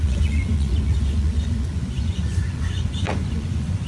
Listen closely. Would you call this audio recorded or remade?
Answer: remade